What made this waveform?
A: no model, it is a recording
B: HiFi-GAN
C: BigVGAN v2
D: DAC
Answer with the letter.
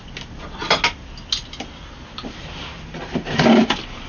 A